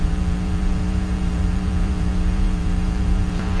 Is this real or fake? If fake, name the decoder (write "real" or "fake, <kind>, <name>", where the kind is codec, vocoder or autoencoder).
fake, vocoder, BigVGAN v2